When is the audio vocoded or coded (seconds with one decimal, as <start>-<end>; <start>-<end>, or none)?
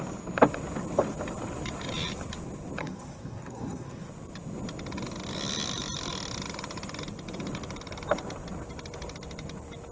2.8-4.1